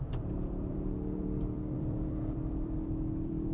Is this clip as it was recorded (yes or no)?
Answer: no